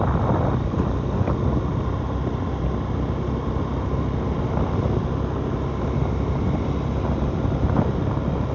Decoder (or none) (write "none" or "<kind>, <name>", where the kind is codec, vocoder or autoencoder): none